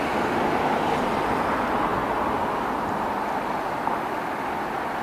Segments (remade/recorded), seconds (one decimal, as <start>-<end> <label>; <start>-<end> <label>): 0.0-5.0 recorded